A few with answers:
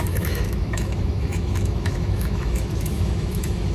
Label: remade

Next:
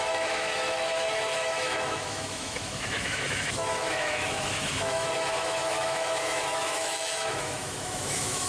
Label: remade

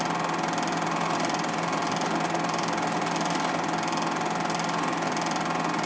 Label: recorded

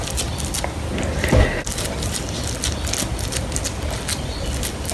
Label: recorded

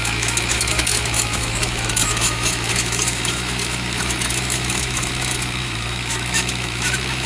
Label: remade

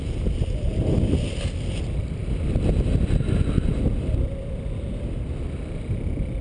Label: recorded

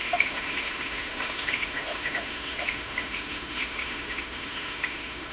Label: remade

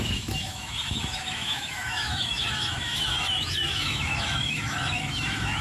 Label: remade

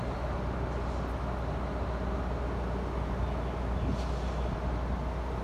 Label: recorded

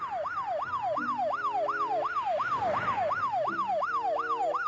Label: recorded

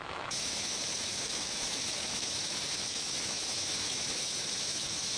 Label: remade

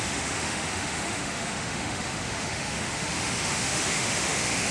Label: remade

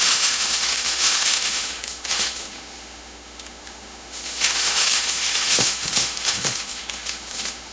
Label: remade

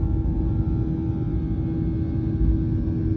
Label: recorded